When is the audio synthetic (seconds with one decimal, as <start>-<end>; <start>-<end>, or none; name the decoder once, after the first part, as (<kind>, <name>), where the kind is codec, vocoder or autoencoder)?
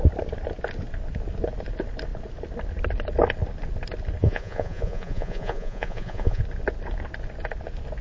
4.2-6.4 (vocoder, Vocos)